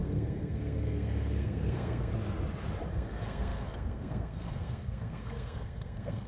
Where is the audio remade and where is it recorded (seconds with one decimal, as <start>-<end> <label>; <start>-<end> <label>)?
0.0-2.1 remade; 2.1-2.9 recorded; 2.9-6.3 remade